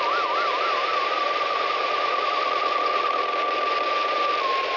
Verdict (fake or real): fake